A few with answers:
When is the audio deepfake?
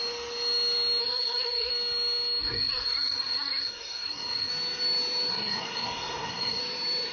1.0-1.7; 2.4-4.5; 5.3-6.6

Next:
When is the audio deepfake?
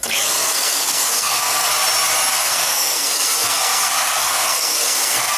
0.0-1.7; 2.3-5.4